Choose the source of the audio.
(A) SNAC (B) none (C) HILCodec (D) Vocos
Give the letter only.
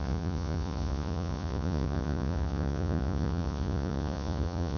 D